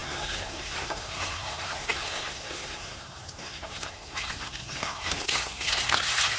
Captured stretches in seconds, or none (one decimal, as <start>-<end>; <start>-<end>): none